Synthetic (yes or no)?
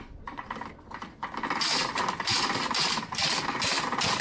no